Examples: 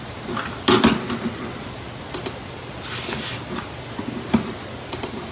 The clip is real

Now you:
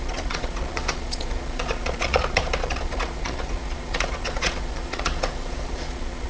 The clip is fake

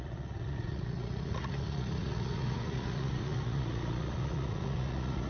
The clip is fake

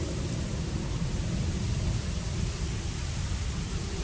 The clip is real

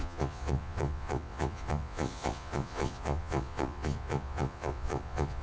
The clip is fake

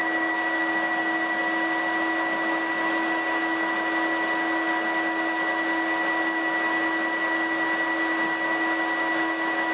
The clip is real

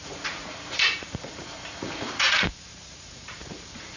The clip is fake